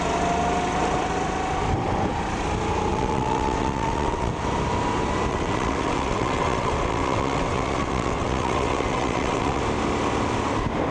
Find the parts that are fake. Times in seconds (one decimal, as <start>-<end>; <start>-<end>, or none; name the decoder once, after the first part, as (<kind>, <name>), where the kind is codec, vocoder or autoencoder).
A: 2.9-4.3 (vocoder, WaveNeXt); 5.3-9.6